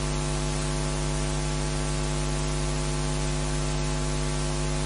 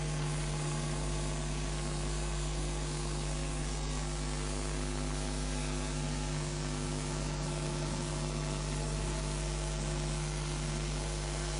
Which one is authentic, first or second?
first